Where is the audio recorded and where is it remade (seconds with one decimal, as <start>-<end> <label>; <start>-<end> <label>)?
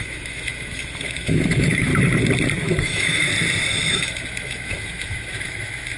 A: 0.0-1.9 remade; 1.9-2.6 recorded; 2.6-3.2 remade; 3.2-3.9 recorded; 3.9-6.0 remade